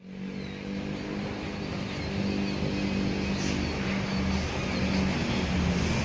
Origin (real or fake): real